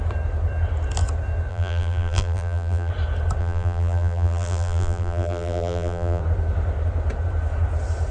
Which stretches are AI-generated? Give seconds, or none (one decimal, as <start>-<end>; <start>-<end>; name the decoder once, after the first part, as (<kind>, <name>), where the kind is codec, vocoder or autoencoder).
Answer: 1.5-2.9 (vocoder, BigVGAN v2); 3.4-6.2

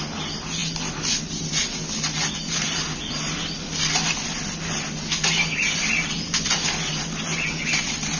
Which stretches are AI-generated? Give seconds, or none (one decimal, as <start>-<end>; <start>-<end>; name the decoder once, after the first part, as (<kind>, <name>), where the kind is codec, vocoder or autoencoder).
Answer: none